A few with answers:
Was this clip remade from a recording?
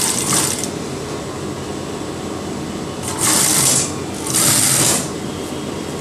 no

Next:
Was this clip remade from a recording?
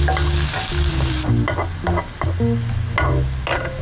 no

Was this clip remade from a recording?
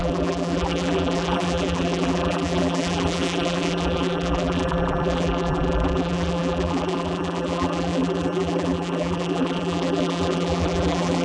yes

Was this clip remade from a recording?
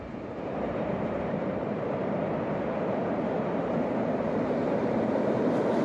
yes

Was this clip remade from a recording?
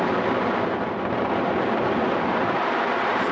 no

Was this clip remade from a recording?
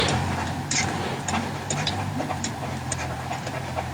yes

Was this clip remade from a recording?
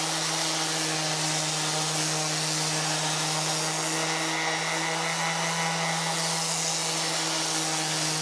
no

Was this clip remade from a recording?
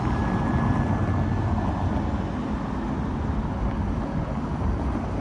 no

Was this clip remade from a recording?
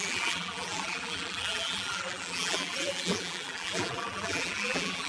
yes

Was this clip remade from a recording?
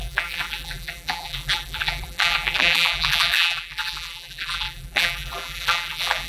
yes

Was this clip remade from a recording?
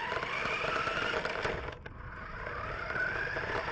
no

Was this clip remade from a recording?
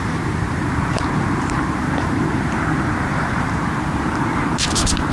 yes